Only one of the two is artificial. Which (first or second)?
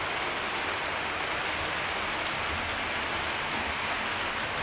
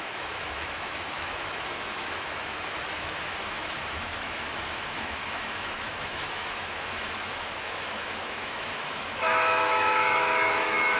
second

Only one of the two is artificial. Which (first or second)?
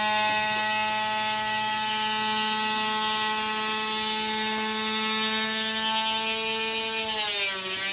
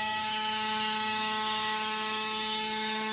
second